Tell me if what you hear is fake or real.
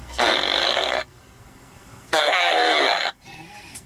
fake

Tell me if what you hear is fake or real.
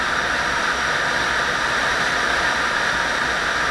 real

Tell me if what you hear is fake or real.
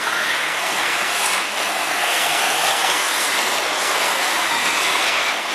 fake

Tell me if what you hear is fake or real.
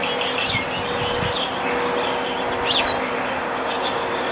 real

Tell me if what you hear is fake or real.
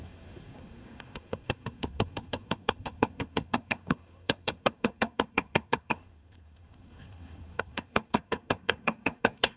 fake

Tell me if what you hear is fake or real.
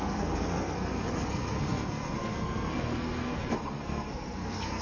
fake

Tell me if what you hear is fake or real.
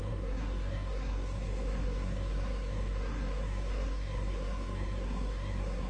fake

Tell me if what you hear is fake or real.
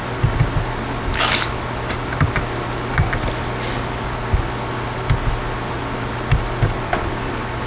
real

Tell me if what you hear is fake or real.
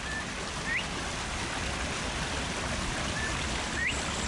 real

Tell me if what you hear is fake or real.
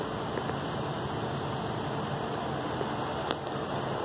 real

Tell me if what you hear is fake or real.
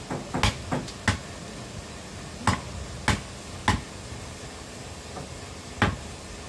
real